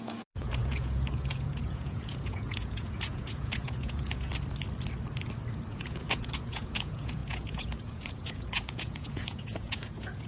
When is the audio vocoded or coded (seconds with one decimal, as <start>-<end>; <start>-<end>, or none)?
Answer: 0.0-4.3; 5.7-10.3